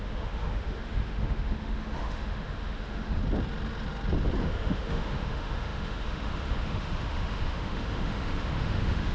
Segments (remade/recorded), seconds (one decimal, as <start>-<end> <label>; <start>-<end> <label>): 0.0-3.2 remade; 3.2-4.4 recorded; 4.4-9.1 remade